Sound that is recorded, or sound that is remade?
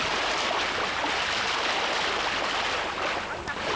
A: recorded